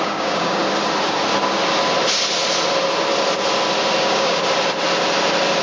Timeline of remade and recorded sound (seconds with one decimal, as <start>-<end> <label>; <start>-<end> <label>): 0.0-0.6 remade; 0.6-4.0 recorded; 4.0-4.4 remade; 4.4-5.6 recorded